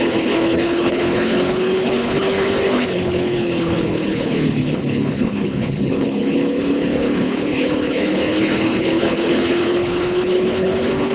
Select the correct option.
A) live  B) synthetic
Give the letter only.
B